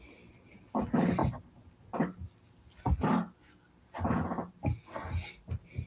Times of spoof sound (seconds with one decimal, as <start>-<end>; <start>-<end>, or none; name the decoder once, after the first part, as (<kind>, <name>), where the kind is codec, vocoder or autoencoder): none